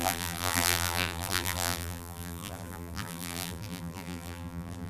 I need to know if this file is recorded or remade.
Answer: remade